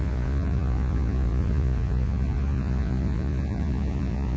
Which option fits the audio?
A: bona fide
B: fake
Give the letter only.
B